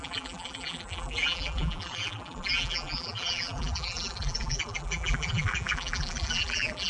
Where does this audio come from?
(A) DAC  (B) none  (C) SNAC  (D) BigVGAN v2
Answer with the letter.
D